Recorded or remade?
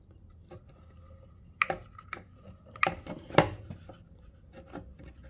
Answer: recorded